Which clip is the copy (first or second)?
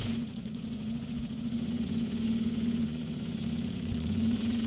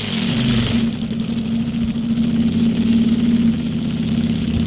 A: first